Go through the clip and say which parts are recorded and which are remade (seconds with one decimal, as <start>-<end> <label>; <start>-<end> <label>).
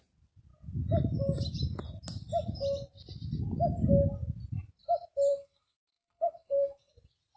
0.0-5.3 recorded; 5.3-6.9 remade; 6.9-7.4 recorded